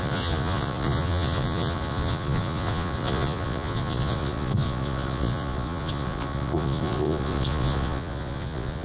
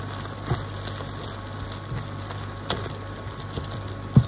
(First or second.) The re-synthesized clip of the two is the first